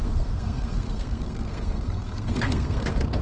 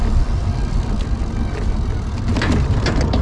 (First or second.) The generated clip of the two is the first